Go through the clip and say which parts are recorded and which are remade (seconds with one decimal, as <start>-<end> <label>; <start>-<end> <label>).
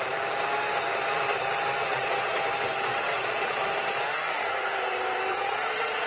0.0-1.8 recorded; 1.8-2.4 remade; 2.4-2.9 recorded; 2.9-3.6 remade; 3.6-5.3 recorded; 5.3-6.1 remade